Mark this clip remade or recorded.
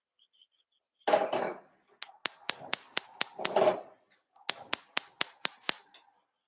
recorded